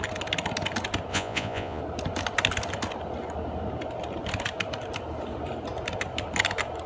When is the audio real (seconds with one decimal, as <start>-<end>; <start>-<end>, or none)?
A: 0.0-1.1; 1.8-6.9